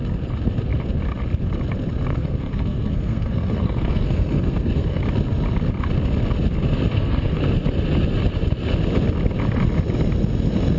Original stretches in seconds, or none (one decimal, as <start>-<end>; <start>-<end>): 0.0-2.1; 5.0-6.9; 7.4-10.8